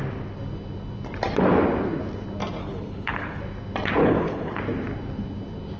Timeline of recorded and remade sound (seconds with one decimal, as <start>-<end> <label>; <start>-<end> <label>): 0.0-2.6 recorded; 2.6-3.4 remade; 3.4-4.0 recorded; 4.0-4.6 remade; 4.6-5.8 recorded